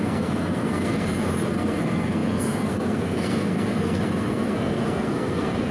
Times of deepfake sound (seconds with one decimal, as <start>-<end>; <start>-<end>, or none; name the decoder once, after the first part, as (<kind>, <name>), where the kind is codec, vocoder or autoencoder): 0.0-5.7 (codec, SNAC)